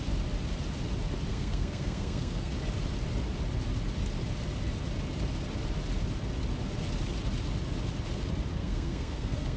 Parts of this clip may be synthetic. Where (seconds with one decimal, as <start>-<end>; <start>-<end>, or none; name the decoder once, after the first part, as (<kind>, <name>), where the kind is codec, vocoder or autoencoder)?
1.3-2.5 (codec, SNAC); 8.6-9.6